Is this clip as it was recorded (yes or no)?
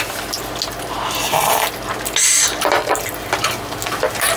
yes